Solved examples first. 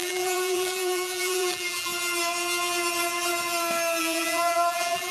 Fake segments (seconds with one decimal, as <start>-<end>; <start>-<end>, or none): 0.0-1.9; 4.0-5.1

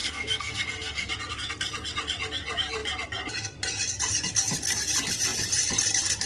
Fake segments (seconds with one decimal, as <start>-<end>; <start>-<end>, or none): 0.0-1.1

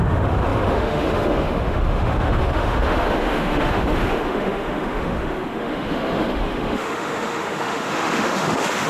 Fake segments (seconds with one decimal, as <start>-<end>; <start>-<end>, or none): 0.0-8.9

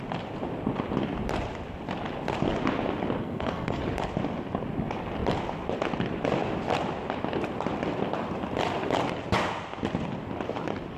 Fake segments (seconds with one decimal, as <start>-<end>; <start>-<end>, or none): 3.2-3.8